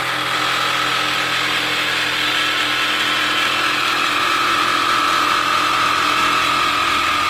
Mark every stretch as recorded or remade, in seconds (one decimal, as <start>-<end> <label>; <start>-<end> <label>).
0.0-3.8 recorded; 3.8-6.2 remade; 6.2-7.3 recorded